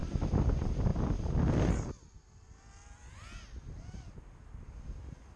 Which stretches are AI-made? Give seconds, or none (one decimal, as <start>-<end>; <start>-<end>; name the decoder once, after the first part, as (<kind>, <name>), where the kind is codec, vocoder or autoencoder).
0.0-0.5 (vocoder, BigVGAN v2)